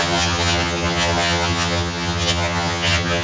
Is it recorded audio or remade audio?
remade